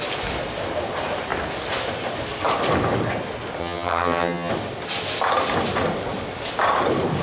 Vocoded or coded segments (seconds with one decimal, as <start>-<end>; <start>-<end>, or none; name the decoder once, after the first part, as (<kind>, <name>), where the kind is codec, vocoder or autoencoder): 3.6-4.5 (vocoder, HiFi-GAN)